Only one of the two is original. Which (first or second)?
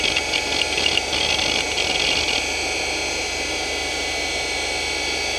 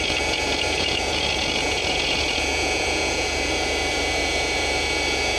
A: first